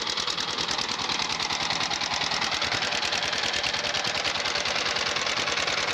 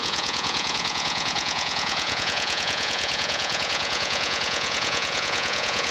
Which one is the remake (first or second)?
second